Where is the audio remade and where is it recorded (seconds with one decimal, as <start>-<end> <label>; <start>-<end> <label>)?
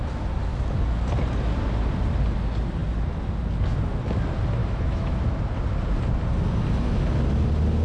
0.0-4.6 recorded; 4.6-5.4 remade; 5.4-7.8 recorded